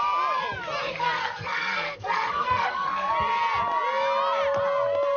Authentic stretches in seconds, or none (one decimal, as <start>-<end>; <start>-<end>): 0.0-0.8; 3.1-5.2